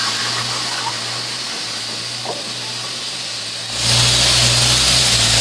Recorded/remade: recorded